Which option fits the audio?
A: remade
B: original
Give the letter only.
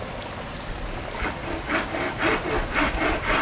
B